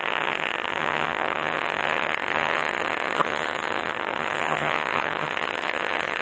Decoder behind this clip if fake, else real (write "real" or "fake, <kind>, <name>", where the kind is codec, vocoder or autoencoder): fake, vocoder, HiFi-GAN